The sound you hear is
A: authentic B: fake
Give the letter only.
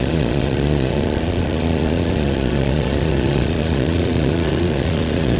B